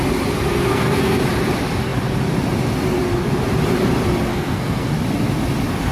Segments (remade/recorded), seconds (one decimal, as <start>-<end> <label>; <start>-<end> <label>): 0.0-0.7 recorded; 0.7-1.2 remade; 1.2-4.3 recorded; 4.3-4.9 remade; 4.9-5.9 recorded